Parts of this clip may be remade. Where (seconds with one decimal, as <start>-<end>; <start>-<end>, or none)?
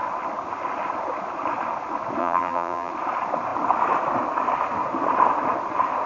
2.2-2.9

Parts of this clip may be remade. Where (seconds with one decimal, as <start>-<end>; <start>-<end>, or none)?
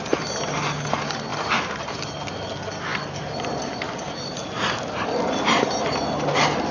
1.3-2.1; 2.9-3.4; 4.4-6.0